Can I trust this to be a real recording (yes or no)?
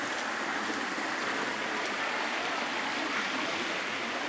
yes